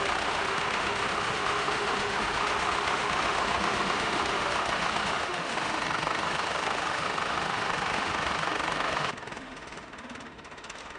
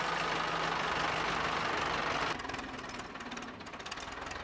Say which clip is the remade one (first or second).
first